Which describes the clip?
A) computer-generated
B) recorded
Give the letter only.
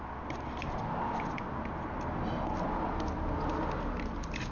B